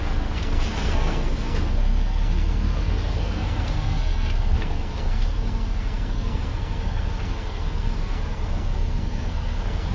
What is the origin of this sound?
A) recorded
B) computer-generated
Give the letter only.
B